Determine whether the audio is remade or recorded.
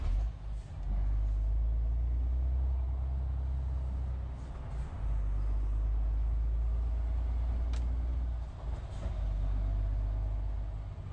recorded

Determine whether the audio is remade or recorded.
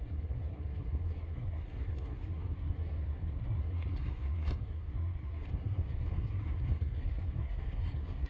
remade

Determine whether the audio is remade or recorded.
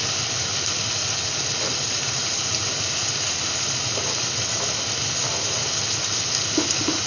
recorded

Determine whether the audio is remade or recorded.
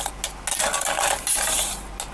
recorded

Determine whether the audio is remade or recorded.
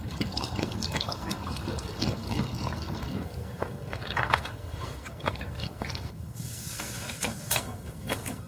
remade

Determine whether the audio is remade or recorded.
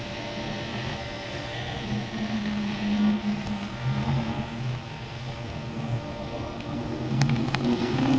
remade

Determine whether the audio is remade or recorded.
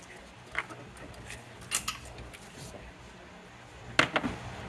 recorded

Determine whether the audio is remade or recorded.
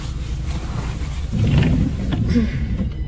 recorded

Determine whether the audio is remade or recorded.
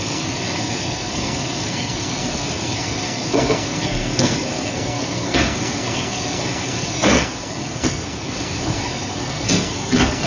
remade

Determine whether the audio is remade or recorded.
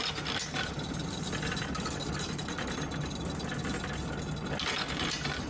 recorded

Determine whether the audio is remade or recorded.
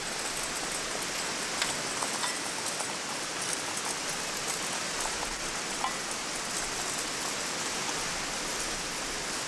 recorded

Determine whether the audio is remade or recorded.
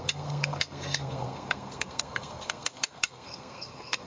remade